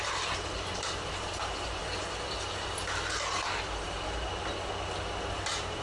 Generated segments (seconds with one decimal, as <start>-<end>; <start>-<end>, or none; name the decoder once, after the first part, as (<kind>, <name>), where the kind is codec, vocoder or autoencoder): 0.0-1.8 (vocoder, BigVGAN v2); 5.3-5.8